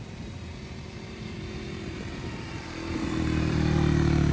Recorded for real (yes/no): no